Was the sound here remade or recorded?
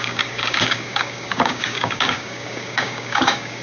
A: remade